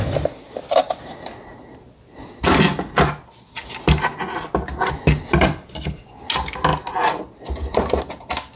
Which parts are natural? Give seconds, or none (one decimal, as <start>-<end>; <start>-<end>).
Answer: 0.0-8.6